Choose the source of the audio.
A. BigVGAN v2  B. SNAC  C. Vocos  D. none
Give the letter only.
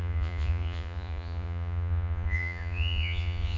C